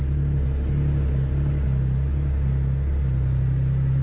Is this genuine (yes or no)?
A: yes